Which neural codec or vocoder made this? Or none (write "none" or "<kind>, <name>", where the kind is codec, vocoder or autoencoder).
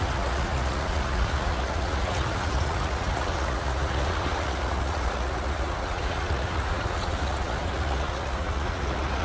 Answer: vocoder, Vocos